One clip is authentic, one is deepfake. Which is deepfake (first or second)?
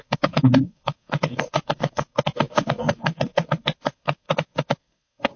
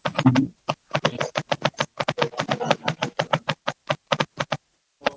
first